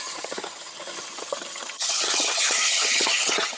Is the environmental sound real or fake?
fake